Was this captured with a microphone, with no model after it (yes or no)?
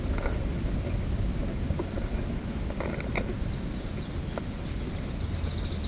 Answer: yes